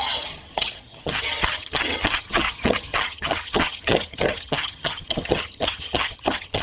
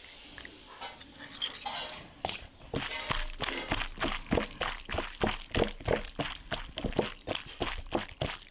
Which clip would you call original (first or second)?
second